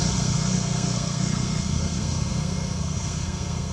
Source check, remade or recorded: remade